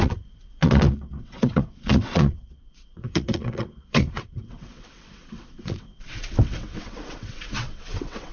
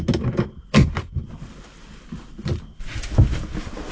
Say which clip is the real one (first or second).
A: second